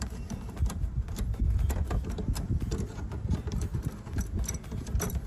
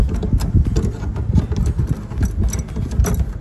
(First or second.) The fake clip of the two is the first